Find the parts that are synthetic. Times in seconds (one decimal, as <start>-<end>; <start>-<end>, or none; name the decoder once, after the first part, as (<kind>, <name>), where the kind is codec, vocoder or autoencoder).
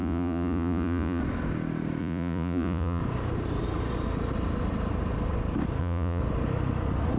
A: 0.0-1.2 (vocoder, Vocos); 2.0-3.0; 5.8-6.2